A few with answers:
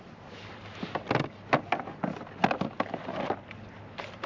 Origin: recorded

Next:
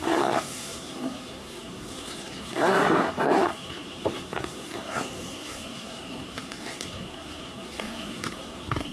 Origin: remade